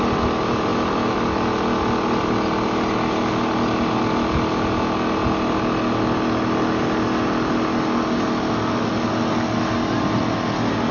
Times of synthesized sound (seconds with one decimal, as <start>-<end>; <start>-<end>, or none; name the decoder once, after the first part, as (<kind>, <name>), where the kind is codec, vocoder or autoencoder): none

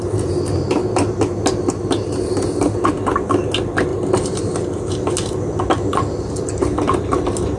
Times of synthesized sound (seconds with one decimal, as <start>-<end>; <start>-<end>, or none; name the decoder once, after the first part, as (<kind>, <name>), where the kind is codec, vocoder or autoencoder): none

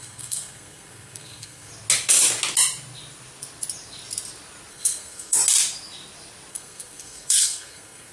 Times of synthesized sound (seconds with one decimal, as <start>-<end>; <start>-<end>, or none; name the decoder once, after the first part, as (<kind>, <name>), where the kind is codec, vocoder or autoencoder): 0.0-1.7 (codec, SNAC); 4.7-5.4; 6.5-8.1

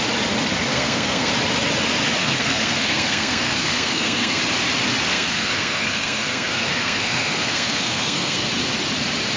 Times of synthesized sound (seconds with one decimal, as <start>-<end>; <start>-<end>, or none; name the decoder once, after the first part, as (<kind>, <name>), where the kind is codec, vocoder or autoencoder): 0.7-1.3 (codec, SNAC); 2.2-4.4; 5.1-8.5

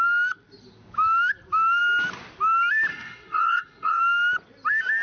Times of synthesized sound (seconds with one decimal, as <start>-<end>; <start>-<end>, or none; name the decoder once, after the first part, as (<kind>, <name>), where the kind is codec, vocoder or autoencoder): 2.9-4.0 (codec, SNAC)

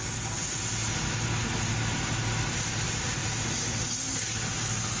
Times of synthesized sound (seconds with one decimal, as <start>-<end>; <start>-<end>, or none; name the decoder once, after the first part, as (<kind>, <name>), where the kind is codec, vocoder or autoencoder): none

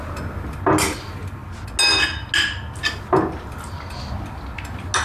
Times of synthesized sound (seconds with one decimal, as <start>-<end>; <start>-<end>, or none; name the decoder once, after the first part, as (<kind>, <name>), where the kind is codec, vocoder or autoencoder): none